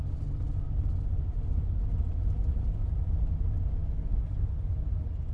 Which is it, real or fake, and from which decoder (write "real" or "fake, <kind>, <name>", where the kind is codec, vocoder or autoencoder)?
real